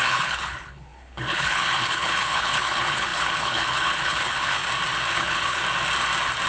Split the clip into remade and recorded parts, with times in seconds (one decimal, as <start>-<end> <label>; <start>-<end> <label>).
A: 0.0-4.6 remade; 4.6-5.1 recorded; 5.1-5.6 remade; 5.6-6.5 recorded